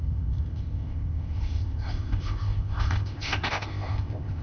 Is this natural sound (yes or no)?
no